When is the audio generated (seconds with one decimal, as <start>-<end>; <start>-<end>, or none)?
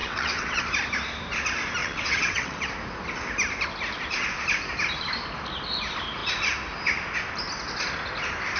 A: 0.0-0.6; 1.8-2.7